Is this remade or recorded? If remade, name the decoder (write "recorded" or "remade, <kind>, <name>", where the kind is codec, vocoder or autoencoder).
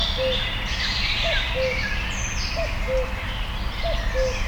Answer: recorded